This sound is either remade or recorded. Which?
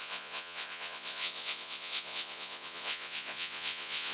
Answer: remade